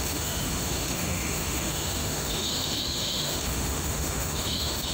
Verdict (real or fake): fake